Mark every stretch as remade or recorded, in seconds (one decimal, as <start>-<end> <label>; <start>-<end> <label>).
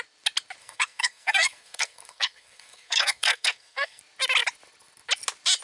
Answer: 0.0-0.6 recorded; 0.6-4.0 remade; 4.0-5.6 recorded